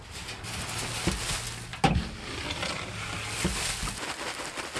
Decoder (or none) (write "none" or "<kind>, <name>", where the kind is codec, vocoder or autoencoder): none